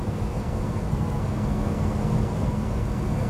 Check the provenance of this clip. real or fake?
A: fake